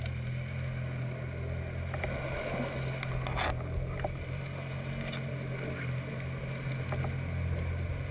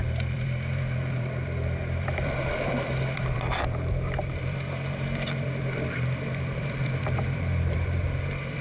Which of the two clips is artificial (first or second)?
second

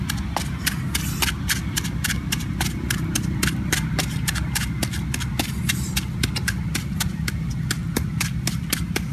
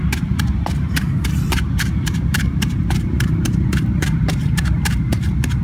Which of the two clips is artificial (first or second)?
second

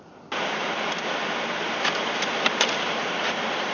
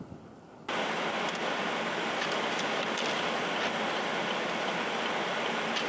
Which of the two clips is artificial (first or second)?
first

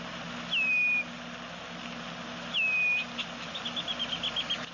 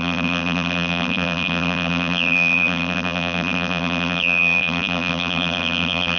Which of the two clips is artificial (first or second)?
second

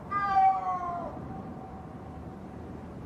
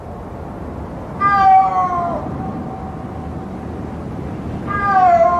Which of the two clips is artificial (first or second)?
first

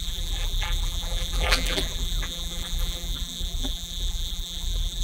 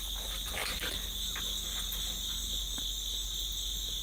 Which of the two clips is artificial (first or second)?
first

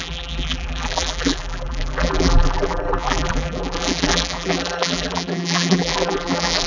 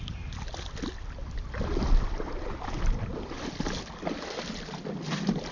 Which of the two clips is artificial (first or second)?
first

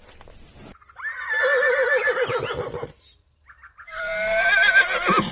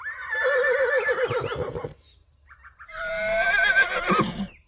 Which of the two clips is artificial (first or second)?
second